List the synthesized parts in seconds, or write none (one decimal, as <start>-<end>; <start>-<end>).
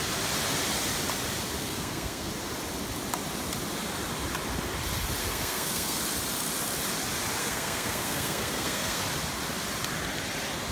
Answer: 1.6-2.3; 5.2-6.0; 7.4-9.0